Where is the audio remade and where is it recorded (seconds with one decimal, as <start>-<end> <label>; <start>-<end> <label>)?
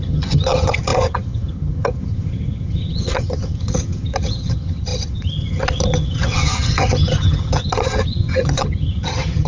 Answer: 0.0-9.5 remade